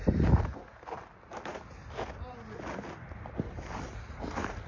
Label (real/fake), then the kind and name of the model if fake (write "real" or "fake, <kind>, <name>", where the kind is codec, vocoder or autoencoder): real